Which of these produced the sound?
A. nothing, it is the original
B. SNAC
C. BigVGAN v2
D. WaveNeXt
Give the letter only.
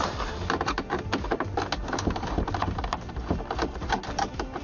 A